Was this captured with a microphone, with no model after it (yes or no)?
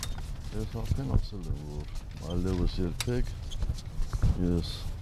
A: yes